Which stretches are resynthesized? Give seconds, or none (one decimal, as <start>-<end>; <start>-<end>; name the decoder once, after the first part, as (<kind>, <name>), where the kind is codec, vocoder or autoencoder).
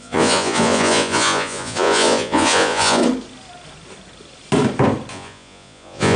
0.0-3.0 (vocoder, Vocos); 5.1-6.2